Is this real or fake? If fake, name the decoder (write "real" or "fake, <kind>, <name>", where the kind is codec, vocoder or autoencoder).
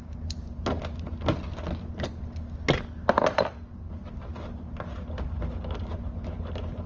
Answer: real